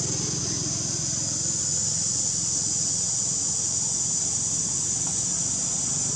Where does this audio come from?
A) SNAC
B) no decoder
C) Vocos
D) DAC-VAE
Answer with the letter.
B